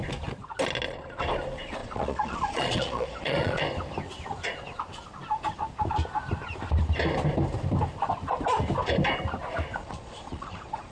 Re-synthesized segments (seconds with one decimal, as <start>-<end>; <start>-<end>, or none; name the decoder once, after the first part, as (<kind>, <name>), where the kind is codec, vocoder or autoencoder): 1.8-3.6 (vocoder, Vocos); 9.8-10.9